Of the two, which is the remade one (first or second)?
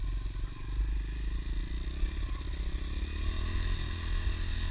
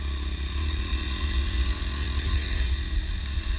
second